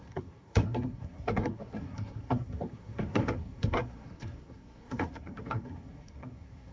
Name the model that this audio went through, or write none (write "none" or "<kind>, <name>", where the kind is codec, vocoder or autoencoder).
codec, SNAC